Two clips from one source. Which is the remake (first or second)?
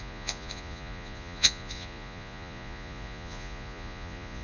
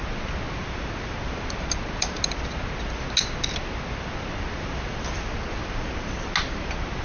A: first